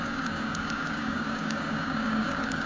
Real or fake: fake